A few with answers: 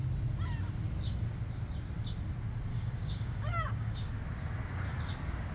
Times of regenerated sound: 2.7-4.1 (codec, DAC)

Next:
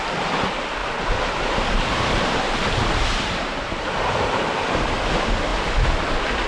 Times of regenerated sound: 0.8-4.7 (vocoder, BigVGAN v2); 5.5-6.0